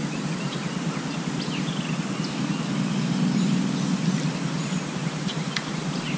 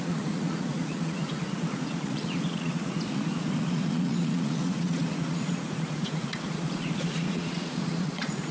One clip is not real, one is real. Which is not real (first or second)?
second